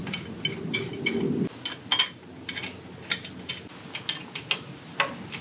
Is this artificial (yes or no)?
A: no